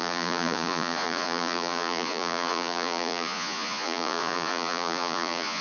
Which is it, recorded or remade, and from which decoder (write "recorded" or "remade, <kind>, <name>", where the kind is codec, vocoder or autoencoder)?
remade, vocoder, Vocos